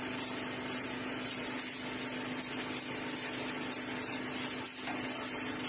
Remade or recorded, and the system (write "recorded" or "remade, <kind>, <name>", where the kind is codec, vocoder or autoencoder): recorded